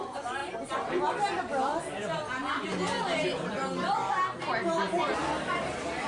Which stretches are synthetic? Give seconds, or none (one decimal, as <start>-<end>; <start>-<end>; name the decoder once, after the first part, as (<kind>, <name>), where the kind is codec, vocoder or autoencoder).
none